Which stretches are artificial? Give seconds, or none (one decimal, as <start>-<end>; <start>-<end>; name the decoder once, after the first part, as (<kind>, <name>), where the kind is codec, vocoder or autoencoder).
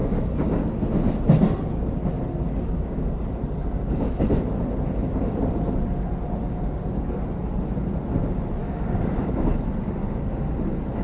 0.0-0.6 (codec, DAC); 2.5-4.2; 8.6-9.5; 10.0-10.6